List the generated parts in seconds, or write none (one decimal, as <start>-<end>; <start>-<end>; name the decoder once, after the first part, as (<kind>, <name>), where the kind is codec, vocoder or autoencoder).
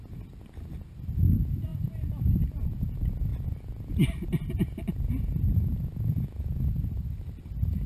none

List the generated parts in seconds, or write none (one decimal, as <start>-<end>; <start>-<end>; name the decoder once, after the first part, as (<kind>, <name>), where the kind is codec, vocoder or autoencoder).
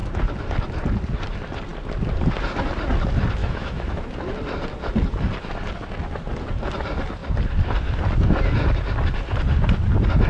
3.4-4.1 (autoencoder, DAC-VAE)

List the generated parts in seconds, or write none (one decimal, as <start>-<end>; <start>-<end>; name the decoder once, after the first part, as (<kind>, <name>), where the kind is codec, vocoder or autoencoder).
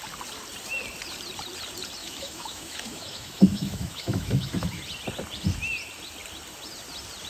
2.0-4.8 (autoencoder, DAC-VAE)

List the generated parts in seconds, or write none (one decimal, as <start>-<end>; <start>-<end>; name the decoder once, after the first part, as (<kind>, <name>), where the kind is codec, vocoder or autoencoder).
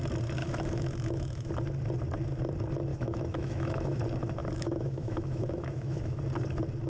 0.4-1.5 (autoencoder, DAC-VAE); 2.9-4.0; 4.4-6.2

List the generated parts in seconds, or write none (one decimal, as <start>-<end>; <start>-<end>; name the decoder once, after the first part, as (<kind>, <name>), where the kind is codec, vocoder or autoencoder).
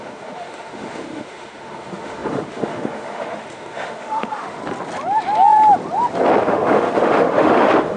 0.0-4.6 (autoencoder, DAC-VAE); 6.4-8.0